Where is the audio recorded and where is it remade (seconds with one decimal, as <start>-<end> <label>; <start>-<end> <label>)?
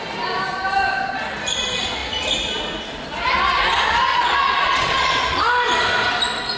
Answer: 0.0-4.1 recorded; 4.1-5.4 remade; 5.4-6.6 recorded